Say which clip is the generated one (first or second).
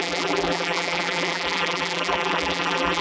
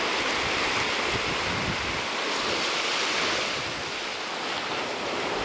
first